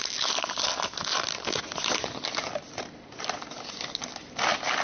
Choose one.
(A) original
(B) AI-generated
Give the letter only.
A